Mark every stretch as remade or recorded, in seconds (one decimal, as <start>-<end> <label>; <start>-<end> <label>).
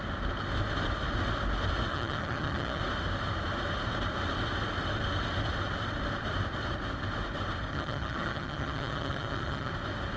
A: 0.0-1.9 recorded; 1.9-2.8 remade; 2.8-7.7 recorded; 7.7-9.7 remade; 9.7-10.2 recorded